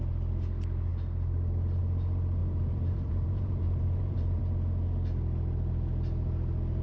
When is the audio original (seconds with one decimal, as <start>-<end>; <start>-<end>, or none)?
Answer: 0.0-2.4; 4.4-6.8